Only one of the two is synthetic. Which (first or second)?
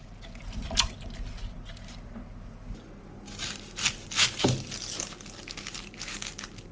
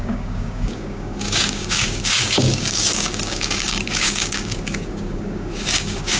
second